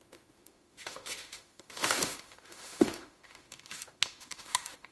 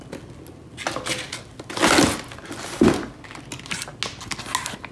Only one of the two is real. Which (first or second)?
second